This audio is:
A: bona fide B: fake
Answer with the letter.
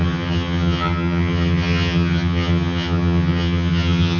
B